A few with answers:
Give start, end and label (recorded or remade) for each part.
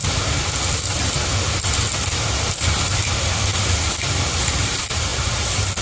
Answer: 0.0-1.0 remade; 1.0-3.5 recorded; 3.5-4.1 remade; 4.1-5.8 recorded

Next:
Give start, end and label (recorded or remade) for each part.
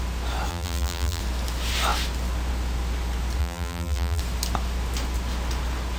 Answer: 0.0-0.5 recorded; 0.5-1.2 remade; 1.2-3.4 recorded; 3.4-4.2 remade; 4.2-6.0 recorded